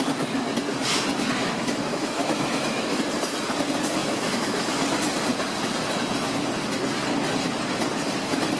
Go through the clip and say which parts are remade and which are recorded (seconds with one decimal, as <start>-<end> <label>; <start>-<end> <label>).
0.0-1.4 recorded; 1.4-3.0 remade; 3.0-4.0 recorded; 4.0-4.7 remade; 4.7-8.6 recorded